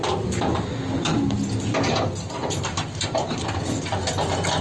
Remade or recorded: recorded